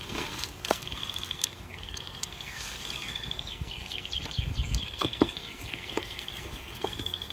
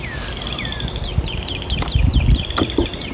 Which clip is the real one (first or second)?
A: second